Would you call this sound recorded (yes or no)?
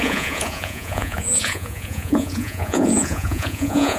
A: no